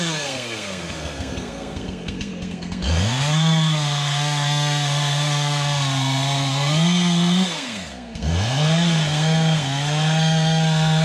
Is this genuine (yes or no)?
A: no